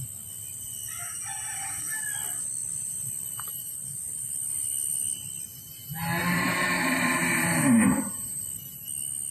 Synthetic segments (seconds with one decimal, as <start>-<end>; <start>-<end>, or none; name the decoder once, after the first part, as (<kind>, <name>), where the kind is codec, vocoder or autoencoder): 1.0-1.8 (vocoder, BigVGAN v2); 6.2-8.4